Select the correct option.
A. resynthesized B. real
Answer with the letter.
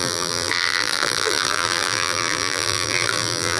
A